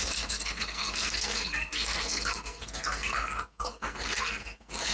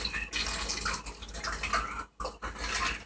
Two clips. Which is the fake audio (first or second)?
first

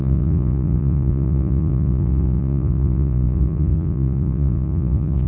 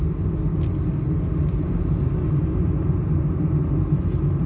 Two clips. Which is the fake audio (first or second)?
first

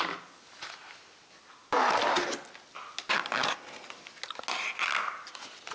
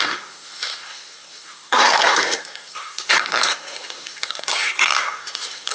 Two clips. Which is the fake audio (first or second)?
second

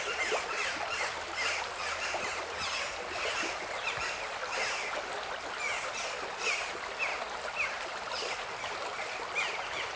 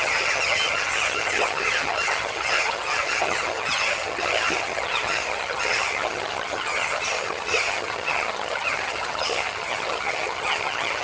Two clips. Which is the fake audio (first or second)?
second